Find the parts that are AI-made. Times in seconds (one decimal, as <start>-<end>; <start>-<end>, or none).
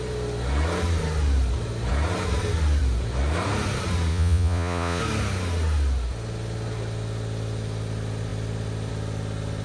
4.1-5.0